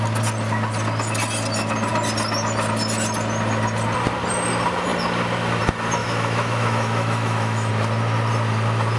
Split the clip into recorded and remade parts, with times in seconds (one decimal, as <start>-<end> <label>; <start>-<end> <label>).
0.0-6.0 recorded; 6.0-7.7 remade; 7.7-9.0 recorded